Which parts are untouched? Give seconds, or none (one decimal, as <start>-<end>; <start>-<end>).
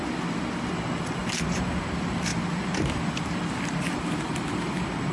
0.0-1.2; 1.9-2.3